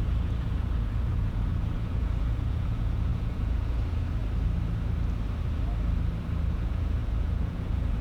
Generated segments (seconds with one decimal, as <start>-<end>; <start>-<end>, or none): 0.0-4.2; 6.5-8.0